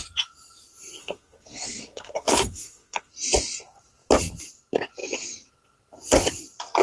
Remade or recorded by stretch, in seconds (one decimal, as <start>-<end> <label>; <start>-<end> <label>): 0.0-1.0 recorded; 1.0-3.1 remade; 3.1-6.8 recorded